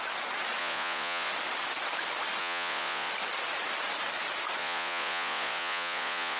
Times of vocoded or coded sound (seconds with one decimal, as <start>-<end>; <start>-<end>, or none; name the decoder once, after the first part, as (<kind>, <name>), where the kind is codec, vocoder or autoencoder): 0.6-1.3 (vocoder, Vocos); 2.4-3.1; 4.6-6.4